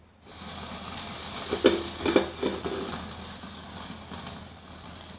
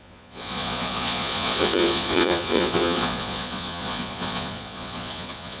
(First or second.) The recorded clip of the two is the first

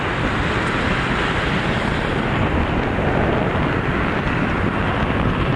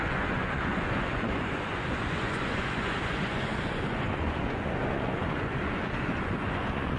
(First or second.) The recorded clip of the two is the first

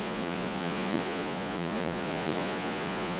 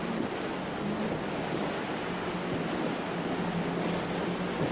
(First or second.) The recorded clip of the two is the second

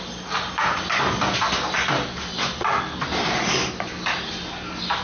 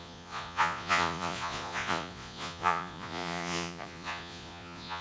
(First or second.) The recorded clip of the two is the first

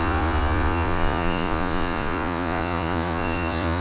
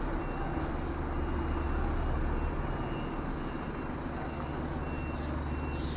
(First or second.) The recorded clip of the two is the second